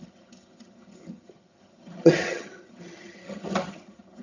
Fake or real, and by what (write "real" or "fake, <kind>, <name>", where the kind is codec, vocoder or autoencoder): fake, vocoder, HiFi-GAN